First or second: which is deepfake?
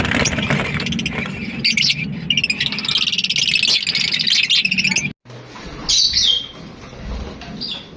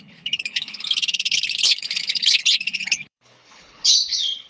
second